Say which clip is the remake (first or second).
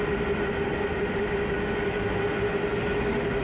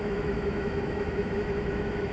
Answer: second